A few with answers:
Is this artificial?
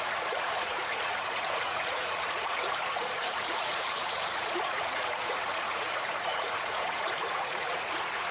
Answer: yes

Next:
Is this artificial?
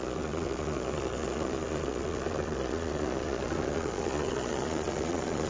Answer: yes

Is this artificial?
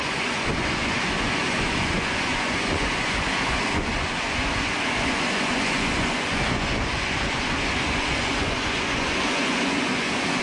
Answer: yes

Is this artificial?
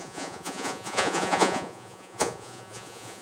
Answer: yes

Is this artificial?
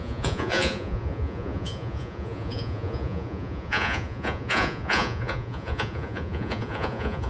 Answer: yes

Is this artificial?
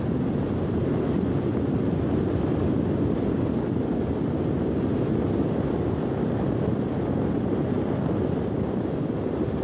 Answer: no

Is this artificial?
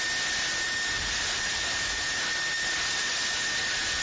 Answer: no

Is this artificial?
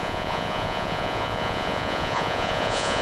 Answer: yes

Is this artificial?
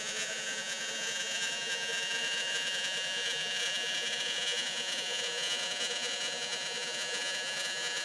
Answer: yes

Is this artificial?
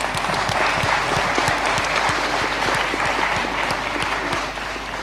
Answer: no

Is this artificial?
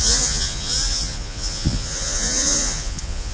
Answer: yes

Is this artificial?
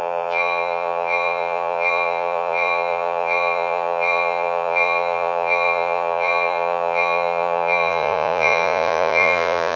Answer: yes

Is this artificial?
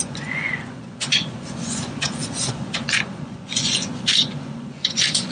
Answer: yes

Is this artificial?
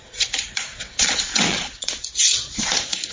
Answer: yes